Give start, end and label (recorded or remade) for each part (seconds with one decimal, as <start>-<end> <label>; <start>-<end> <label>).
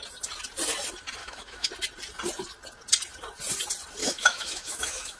0.0-1.2 recorded; 1.2-1.7 remade; 1.7-4.0 recorded; 4.0-5.2 remade